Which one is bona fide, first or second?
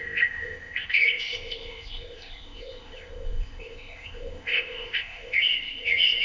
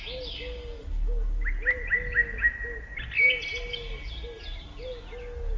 second